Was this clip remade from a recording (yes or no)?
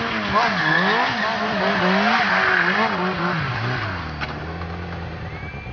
no